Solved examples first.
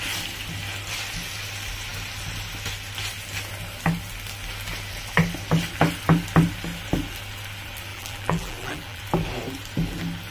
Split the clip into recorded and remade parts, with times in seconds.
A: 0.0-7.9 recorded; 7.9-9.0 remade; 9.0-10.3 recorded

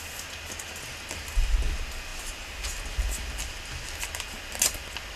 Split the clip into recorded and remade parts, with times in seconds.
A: 0.0-5.2 recorded

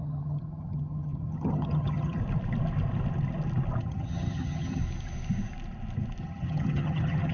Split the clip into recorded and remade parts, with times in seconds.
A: 0.0-2.2 remade; 2.2-3.8 recorded; 3.8-4.8 remade; 4.8-6.2 recorded; 6.2-7.3 remade

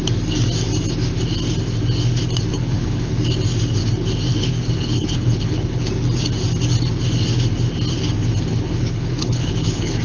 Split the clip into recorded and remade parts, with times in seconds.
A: 0.0-2.5 recorded; 2.5-3.1 remade; 3.1-4.3 recorded; 4.3-5.9 remade; 5.9-8.5 recorded; 8.5-10.0 remade

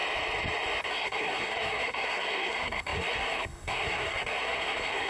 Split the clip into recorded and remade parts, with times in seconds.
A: 0.0-0.9 recorded; 0.9-5.1 remade

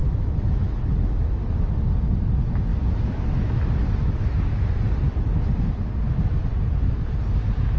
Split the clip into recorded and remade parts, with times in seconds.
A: 0.0-1.7 remade; 1.7-2.7 recorded; 2.7-4.8 remade; 4.8-7.8 recorded